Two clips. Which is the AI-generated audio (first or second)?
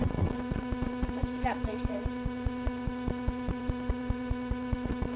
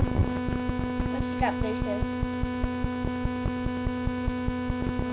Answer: first